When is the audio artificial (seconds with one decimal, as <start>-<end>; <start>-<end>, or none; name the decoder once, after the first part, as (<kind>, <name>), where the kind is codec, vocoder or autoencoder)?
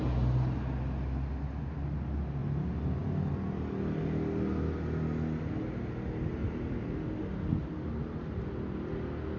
6.4-7.2 (vocoder, BigVGAN v2)